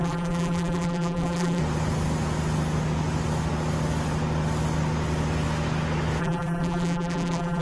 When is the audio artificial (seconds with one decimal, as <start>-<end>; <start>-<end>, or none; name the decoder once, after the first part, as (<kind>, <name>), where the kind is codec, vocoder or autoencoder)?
0.0-1.6 (vocoder, BigVGAN v2); 6.2-7.6